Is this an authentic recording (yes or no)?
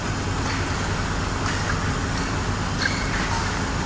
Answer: yes